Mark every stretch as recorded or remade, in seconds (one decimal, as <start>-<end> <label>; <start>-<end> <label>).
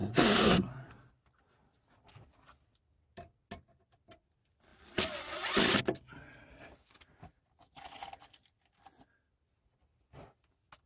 0.0-0.9 remade; 0.9-10.9 recorded